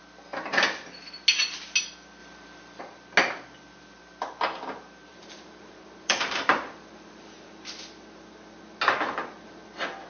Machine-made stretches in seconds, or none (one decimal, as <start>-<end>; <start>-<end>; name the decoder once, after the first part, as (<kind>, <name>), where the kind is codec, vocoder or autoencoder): 2.2-2.8 (vocoder, BigVGAN v2); 5.1-7.5